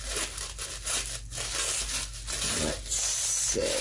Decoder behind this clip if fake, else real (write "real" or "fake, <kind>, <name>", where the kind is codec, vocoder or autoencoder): real